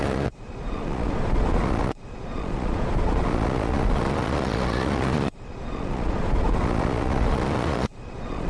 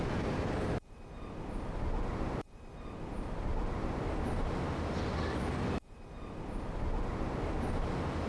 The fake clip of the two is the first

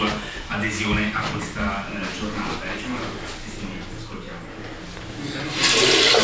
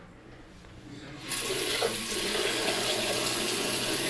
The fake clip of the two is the second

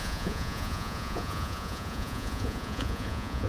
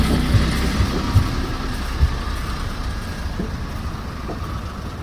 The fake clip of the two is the first